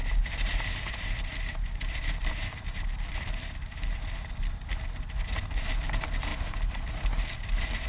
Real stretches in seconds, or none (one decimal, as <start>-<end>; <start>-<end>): 4.5-6.3